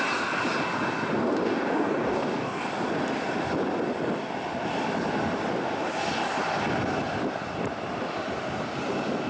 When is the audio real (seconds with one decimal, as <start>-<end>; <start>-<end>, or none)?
0.0-1.2; 2.7-9.3